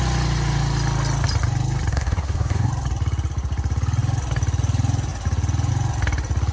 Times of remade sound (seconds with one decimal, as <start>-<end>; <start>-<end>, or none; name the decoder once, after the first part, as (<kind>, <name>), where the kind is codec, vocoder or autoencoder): 1.9-2.7 (codec, SNAC)